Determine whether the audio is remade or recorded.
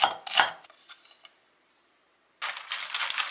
recorded